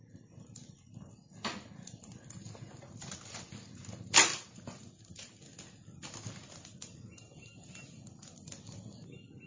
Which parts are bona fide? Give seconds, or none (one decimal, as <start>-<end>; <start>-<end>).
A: 0.0-4.3; 5.4-9.5